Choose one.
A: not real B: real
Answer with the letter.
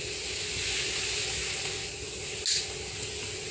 B